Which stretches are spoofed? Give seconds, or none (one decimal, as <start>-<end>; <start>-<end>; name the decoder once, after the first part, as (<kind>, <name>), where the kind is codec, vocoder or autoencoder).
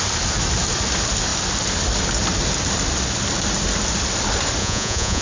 4.6-5.2 (vocoder, Vocos)